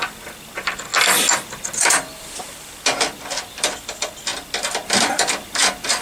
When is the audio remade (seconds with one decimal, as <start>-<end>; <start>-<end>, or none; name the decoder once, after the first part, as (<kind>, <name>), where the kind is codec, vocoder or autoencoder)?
0.0-0.9 (vocoder, BigVGAN v2); 1.9-6.0